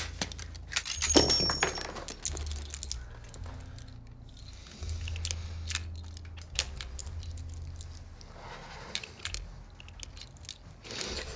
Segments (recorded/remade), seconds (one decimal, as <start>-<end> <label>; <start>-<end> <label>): 0.0-11.4 recorded